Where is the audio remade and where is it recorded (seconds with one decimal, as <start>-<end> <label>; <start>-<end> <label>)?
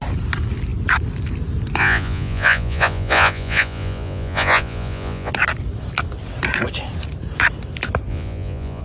0.0-1.8 recorded; 1.8-5.3 remade; 5.3-8.1 recorded; 8.1-8.8 remade